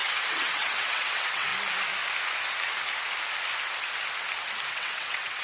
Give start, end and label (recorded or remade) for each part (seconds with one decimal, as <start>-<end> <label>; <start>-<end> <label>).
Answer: 0.0-1.5 remade; 1.5-4.7 recorded; 4.7-5.4 remade